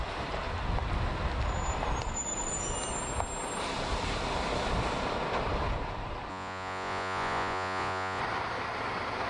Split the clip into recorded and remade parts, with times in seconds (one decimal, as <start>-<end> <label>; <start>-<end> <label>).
0.0-6.3 recorded; 6.3-8.2 remade; 8.2-9.3 recorded